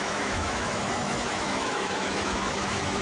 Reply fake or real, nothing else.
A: fake